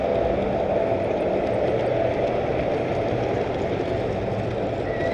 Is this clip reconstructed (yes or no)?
no